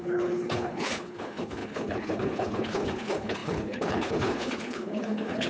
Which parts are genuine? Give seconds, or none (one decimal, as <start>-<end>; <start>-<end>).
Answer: none